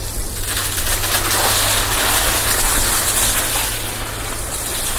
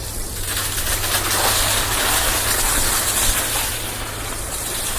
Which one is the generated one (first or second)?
second